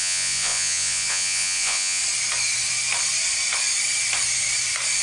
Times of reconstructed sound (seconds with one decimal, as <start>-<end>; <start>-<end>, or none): 0.0-2.0